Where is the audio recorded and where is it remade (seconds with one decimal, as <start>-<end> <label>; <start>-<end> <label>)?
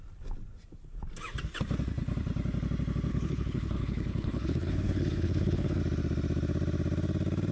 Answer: 0.0-3.1 recorded; 3.1-5.8 remade; 5.8-7.5 recorded